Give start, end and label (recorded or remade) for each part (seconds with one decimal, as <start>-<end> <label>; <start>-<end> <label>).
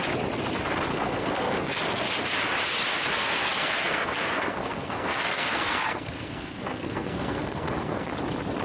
0.0-0.9 recorded; 0.9-1.8 remade; 1.8-3.1 recorded; 3.1-8.1 remade; 8.1-8.6 recorded